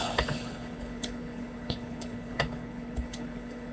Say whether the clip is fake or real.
fake